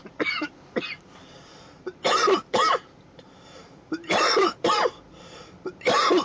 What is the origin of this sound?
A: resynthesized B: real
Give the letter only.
A